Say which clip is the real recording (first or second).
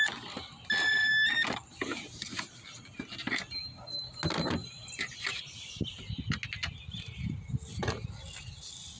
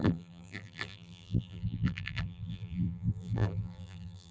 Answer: first